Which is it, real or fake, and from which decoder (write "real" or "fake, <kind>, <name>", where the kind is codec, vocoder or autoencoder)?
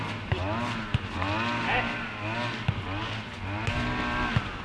real